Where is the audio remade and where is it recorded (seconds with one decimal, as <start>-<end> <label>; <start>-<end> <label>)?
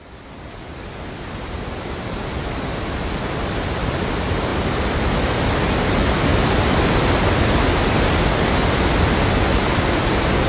0.0-10.5 recorded